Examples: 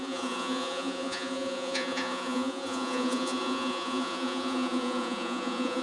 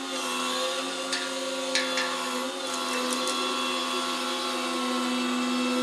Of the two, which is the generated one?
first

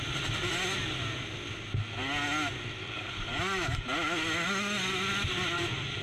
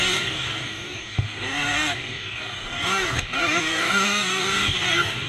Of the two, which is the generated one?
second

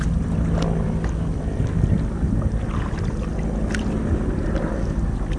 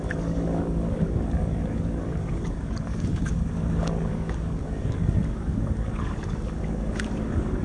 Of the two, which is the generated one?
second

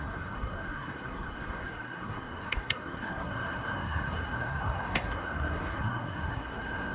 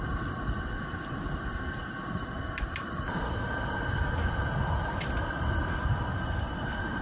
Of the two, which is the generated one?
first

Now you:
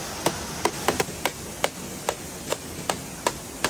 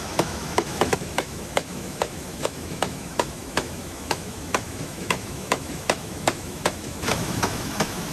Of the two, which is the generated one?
second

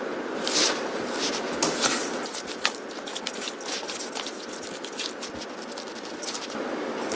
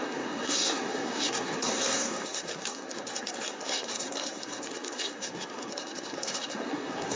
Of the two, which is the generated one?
second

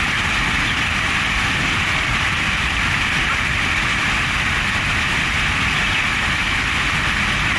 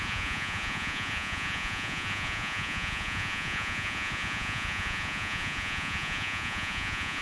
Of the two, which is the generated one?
second